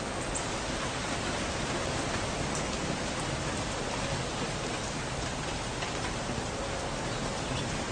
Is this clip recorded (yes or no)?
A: yes